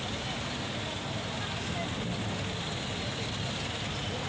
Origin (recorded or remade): recorded